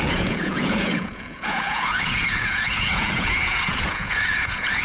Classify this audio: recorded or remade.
remade